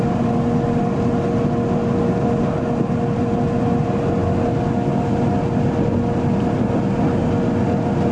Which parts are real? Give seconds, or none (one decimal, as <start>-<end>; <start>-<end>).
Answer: 0.0-8.1